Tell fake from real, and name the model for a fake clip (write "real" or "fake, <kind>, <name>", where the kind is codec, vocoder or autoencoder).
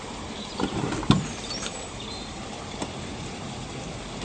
fake, vocoder, BigVGAN v2